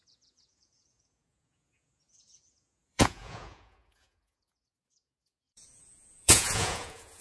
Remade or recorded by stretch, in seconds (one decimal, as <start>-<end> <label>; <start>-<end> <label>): 0.0-7.2 remade

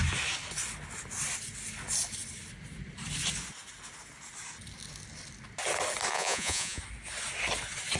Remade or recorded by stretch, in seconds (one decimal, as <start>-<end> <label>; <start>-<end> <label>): 0.0-6.1 recorded; 6.1-6.8 remade; 6.8-8.0 recorded

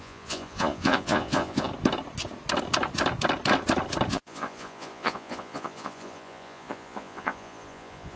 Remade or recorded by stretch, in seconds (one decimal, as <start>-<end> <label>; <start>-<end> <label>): 0.0-1.7 remade; 1.7-4.1 recorded; 4.1-8.2 remade

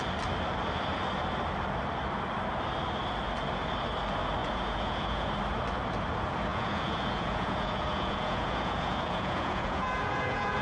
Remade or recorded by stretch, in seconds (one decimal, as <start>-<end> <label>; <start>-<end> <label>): 0.0-4.4 recorded; 4.4-5.3 remade; 5.3-6.5 recorded; 6.5-10.6 remade

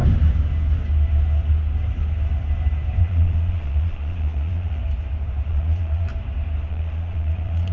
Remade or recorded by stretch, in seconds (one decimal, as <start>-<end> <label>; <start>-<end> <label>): 0.0-3.0 recorded; 3.0-4.8 remade; 4.8-5.5 recorded; 5.5-6.1 remade; 6.1-6.7 recorded; 6.7-7.7 remade

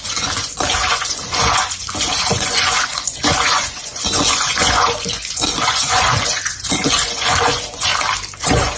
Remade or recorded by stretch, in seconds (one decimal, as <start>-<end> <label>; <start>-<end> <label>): 0.0-7.9 remade; 7.9-8.4 recorded; 8.4-8.8 remade